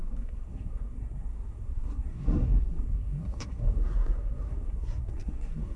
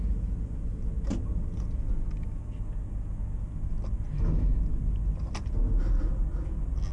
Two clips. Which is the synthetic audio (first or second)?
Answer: first